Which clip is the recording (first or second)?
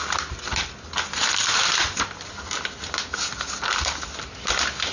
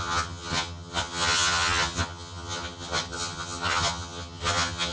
first